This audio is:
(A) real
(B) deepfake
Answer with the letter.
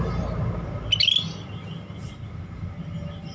A